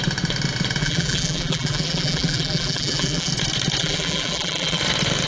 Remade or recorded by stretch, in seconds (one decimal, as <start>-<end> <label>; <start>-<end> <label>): 0.0-0.8 recorded; 0.8-3.3 remade; 3.3-3.8 recorded; 3.8-4.8 remade; 4.8-5.3 recorded